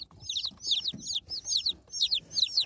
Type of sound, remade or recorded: recorded